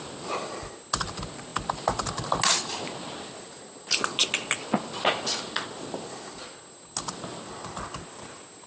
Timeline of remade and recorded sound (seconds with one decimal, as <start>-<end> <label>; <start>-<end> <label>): 0.0-8.7 recorded